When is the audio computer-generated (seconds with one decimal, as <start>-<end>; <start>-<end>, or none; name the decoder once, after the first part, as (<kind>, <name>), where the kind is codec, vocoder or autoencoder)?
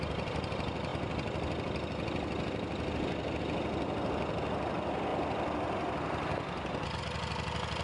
none